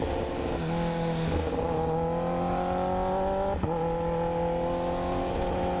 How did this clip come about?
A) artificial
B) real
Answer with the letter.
B